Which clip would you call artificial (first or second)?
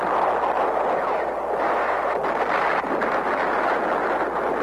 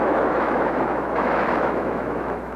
second